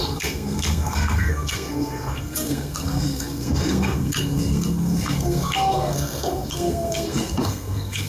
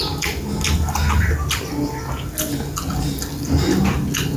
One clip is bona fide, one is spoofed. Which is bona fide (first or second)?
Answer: second